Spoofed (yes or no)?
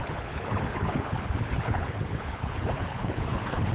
yes